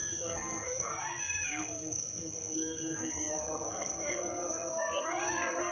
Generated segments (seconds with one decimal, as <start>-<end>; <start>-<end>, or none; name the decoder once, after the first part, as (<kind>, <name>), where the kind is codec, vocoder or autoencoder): 0.0-5.7 (codec, SNAC)

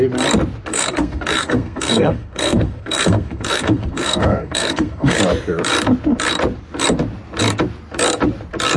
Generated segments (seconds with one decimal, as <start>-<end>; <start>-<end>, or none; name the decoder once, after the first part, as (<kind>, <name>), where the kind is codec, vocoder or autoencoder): 0.7-5.2 (codec, SNAC)

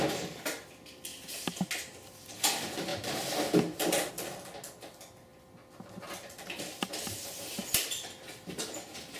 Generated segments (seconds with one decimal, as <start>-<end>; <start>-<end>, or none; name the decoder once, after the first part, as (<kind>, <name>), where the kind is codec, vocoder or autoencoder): none

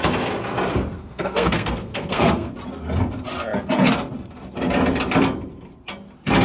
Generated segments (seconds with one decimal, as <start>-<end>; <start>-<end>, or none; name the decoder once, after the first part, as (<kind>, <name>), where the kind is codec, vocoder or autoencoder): 0.9-2.5 (codec, SNAC)

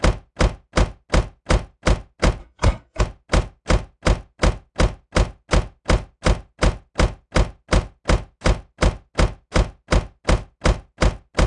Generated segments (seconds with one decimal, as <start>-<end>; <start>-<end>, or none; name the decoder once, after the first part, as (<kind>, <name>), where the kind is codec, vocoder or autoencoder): 2.4-3.0 (codec, SNAC)

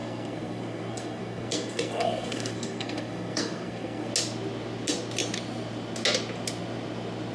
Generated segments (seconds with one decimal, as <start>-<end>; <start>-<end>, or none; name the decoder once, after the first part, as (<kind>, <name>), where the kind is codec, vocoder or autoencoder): 0.0-4.1 (codec, SNAC)

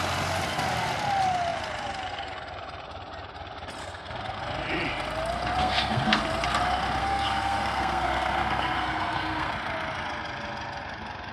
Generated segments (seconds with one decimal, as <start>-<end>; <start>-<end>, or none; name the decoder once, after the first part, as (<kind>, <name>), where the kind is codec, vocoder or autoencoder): 3.8-4.4 (codec, SNAC); 5.6-6.2; 7.0-9.5